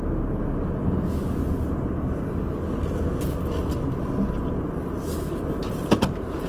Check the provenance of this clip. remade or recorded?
recorded